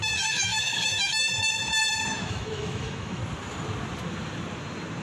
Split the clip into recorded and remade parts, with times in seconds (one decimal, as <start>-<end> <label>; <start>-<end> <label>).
0.0-3.2 remade; 3.2-5.0 recorded